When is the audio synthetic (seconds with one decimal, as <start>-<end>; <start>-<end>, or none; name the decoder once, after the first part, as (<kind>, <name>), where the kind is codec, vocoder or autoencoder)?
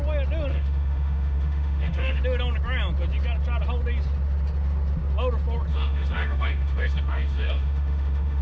0.5-2.2 (autoencoder, DAC-VAE); 5.7-8.4